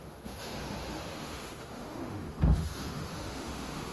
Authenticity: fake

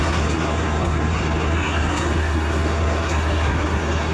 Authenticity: fake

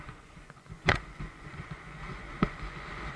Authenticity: fake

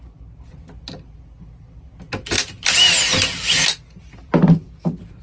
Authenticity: real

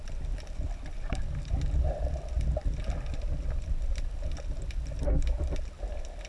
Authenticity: real